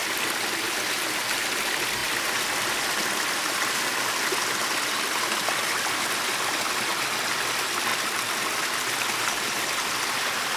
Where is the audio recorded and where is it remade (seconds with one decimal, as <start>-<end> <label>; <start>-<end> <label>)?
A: 0.0-10.6 recorded